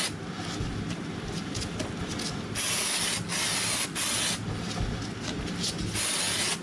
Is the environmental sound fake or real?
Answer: real